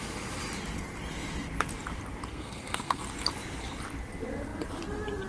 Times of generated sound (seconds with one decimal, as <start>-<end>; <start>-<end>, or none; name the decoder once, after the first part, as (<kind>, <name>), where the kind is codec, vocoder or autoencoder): 2.3-3.0 (codec, SNAC)